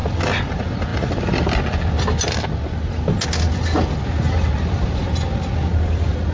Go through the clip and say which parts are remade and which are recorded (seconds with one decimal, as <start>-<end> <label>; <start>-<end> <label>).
0.0-6.3 recorded